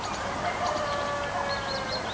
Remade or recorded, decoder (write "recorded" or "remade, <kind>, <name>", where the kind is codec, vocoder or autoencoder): recorded